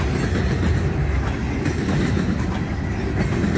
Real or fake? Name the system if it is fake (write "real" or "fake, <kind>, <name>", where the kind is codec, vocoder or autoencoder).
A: real